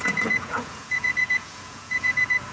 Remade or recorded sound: remade